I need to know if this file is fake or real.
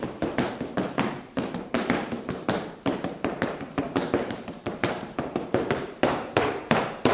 fake